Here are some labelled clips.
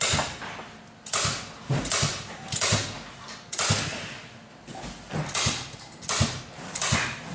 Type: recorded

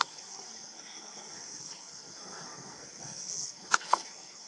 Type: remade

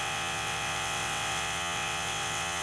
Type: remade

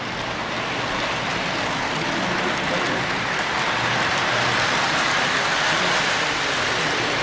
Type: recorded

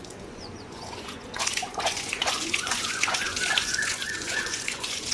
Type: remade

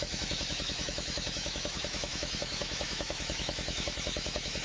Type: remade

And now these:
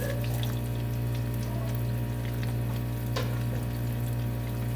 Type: recorded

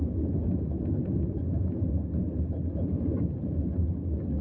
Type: recorded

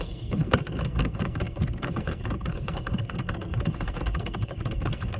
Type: remade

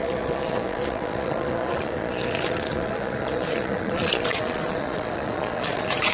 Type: remade